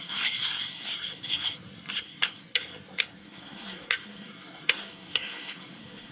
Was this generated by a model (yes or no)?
yes